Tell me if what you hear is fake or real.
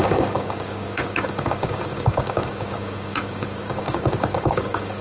fake